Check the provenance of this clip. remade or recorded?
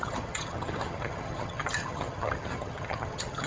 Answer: remade